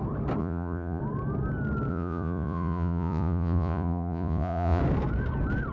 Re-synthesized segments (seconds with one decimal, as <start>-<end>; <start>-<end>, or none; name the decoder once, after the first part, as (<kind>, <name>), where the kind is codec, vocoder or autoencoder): 0.4-1.0 (vocoder, Vocos); 1.9-4.8